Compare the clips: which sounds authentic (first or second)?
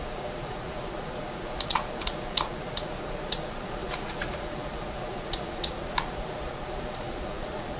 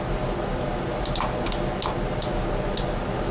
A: second